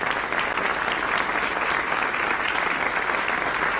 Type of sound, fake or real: real